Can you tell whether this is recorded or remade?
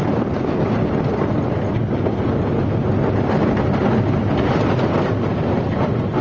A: recorded